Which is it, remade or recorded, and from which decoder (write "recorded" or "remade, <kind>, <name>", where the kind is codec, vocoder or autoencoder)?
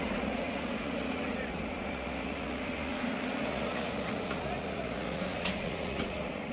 remade, vocoder, Vocos